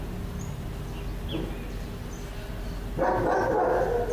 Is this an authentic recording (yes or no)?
yes